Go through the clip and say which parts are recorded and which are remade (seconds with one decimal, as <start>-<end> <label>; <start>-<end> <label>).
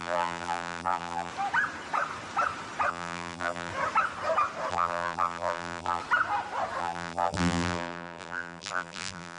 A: 0.0-1.3 remade; 1.3-2.9 recorded; 2.9-3.7 remade; 3.7-4.7 recorded; 4.7-6.0 remade; 6.0-6.8 recorded; 6.8-9.4 remade